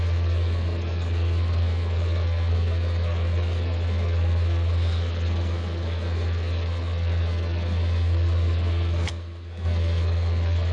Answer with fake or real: fake